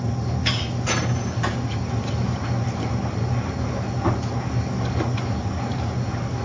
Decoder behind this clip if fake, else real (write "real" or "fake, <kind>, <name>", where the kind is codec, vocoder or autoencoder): real